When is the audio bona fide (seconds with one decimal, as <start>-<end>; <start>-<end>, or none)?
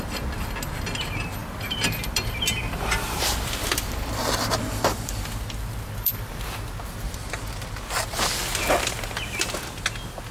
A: 0.0-1.4; 6.3-10.3